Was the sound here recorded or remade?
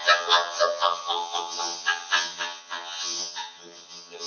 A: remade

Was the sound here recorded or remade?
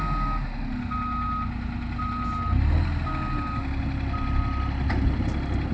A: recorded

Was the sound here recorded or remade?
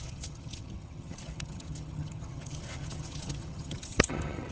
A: remade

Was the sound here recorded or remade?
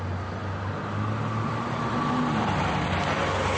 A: recorded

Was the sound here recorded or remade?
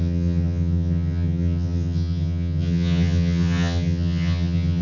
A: remade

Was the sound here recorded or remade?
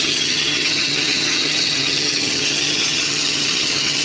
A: remade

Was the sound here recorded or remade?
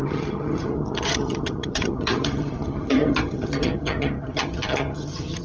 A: remade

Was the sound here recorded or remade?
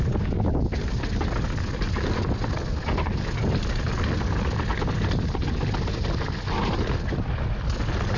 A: recorded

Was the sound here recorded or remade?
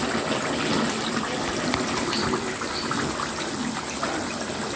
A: recorded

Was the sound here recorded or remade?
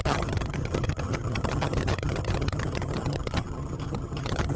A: remade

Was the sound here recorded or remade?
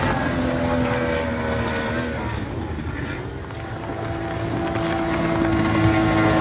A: recorded